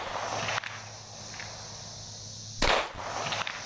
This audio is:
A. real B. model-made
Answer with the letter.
A